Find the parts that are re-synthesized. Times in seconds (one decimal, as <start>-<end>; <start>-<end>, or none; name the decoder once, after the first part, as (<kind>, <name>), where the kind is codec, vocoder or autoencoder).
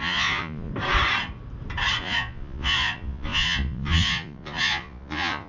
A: 0.0-0.7 (vocoder, Vocos); 2.0-5.5